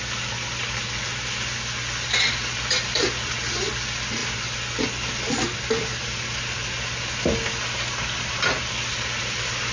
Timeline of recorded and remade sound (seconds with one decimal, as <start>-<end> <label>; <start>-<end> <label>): 0.0-9.7 recorded